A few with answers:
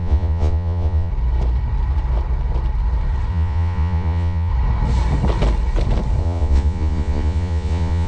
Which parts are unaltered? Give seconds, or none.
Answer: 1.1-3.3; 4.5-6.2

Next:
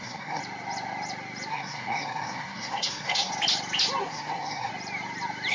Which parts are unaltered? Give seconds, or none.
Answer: 0.4-1.5; 3.3-4.0; 4.7-5.5